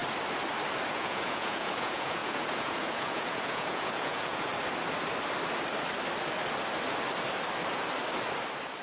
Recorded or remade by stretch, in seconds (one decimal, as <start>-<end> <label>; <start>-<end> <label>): 0.0-0.9 recorded; 0.9-4.5 remade; 4.5-8.8 recorded

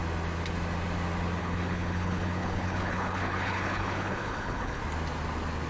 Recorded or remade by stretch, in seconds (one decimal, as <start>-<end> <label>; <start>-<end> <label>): 0.0-1.4 recorded; 1.4-4.8 remade; 4.8-5.7 recorded

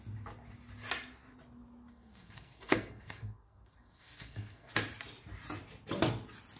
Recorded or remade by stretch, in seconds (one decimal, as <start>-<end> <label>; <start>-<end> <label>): 0.0-1.9 recorded; 1.9-4.7 remade; 4.7-6.6 recorded